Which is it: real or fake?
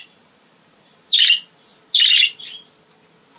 fake